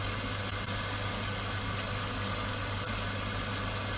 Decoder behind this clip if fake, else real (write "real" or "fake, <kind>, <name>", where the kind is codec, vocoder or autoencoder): real